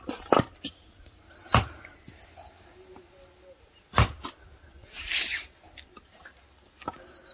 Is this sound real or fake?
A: real